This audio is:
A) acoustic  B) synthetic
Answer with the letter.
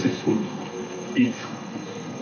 B